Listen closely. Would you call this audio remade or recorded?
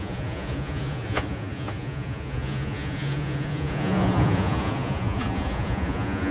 remade